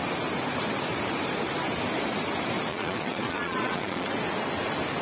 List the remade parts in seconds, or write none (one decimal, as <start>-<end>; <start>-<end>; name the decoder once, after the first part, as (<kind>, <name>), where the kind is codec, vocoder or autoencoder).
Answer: 2.7-4.1 (vocoder, Vocos)